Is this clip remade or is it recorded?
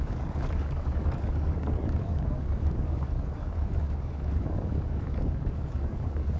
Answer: remade